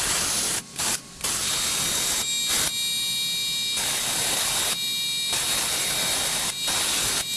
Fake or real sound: real